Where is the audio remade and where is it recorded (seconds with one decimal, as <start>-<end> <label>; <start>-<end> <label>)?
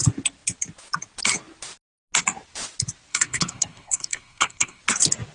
0.0-3.1 recorded; 3.1-4.8 remade; 4.8-5.3 recorded